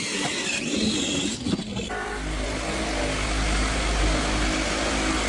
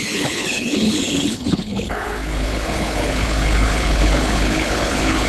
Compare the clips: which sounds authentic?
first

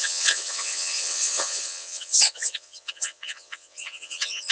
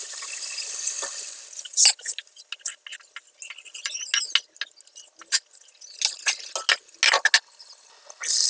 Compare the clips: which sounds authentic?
second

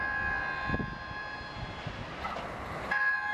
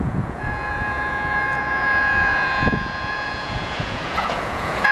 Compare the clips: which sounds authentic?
first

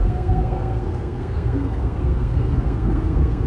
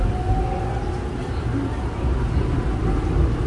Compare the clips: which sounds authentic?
second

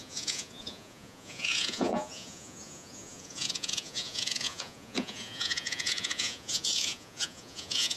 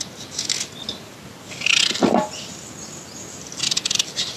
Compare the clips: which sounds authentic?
second